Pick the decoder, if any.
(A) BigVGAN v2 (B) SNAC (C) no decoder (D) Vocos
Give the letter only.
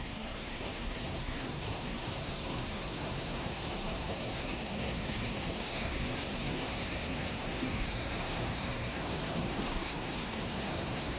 B